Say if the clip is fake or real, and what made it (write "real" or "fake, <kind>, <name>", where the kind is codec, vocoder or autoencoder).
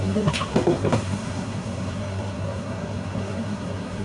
fake, codec, SNAC